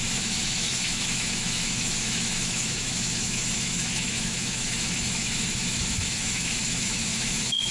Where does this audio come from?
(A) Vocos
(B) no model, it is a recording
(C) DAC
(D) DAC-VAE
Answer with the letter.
D